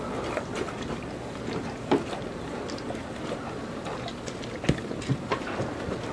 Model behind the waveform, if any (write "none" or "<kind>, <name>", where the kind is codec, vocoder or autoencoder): none